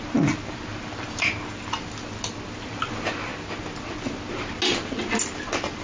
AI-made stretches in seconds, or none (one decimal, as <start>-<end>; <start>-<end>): none